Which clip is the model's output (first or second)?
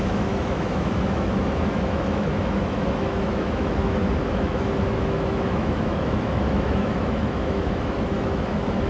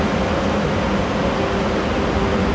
first